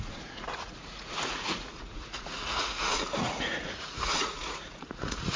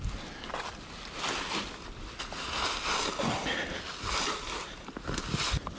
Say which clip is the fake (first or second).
first